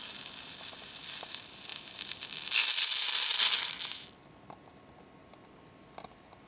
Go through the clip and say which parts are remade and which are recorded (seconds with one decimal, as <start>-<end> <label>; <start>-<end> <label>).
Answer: 0.0-6.5 recorded